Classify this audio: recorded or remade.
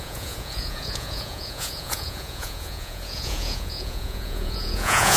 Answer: remade